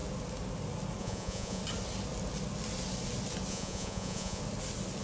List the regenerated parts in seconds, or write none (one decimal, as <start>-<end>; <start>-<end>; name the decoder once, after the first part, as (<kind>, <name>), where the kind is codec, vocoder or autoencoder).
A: 1.0-1.6 (vocoder, Vocos); 3.5-4.4